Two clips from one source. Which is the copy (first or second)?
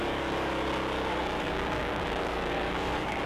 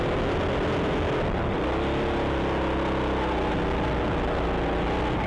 first